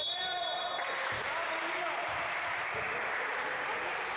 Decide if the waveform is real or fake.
fake